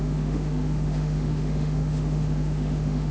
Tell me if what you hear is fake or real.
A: fake